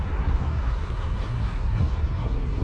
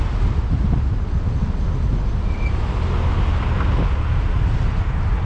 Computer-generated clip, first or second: first